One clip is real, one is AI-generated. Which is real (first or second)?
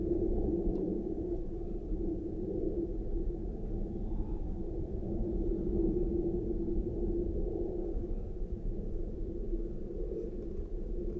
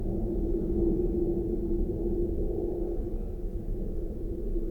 second